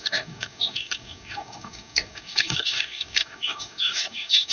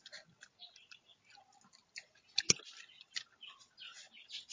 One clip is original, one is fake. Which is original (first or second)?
second